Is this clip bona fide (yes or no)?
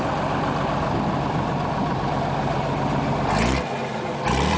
yes